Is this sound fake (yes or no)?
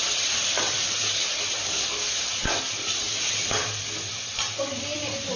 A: no